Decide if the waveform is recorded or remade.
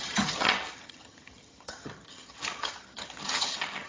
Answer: remade